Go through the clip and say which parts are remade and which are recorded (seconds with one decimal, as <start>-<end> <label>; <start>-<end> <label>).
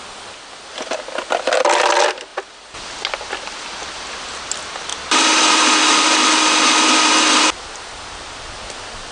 0.0-9.1 recorded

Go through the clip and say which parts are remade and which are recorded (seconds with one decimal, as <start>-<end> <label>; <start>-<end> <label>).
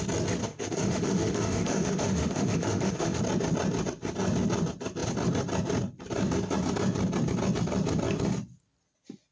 0.0-0.4 recorded; 0.4-3.2 remade; 3.2-9.3 recorded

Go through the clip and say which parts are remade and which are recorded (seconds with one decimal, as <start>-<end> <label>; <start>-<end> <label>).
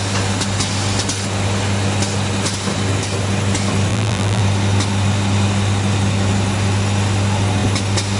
0.0-3.9 recorded; 3.9-4.4 remade; 4.4-8.2 recorded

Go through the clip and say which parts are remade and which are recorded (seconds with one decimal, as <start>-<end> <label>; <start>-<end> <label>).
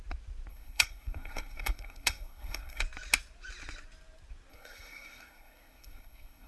0.0-0.5 recorded; 0.5-2.8 remade; 2.8-4.5 recorded; 4.5-6.5 remade